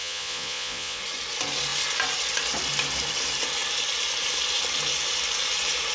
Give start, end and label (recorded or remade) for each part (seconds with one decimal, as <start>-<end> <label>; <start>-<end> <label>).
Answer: 0.0-1.0 remade; 1.0-5.9 recorded